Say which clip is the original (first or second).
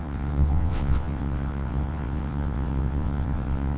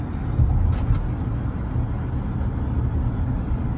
second